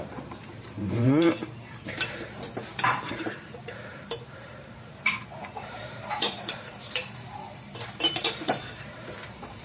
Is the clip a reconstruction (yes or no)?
yes